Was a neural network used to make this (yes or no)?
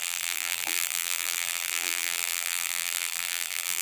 yes